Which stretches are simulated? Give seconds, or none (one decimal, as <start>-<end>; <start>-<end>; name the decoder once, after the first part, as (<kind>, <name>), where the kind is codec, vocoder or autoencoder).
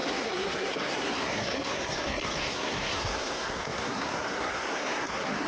0.0-5.5 (codec, SNAC)